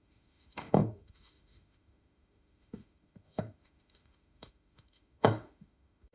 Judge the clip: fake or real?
fake